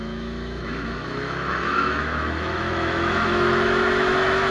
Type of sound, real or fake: fake